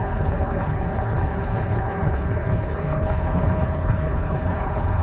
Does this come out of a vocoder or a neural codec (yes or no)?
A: yes